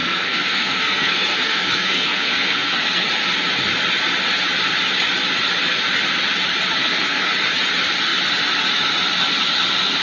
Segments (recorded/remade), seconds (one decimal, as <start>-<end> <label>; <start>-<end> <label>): 0.0-3.1 remade; 3.1-6.8 recorded; 6.8-7.3 remade; 7.3-10.0 recorded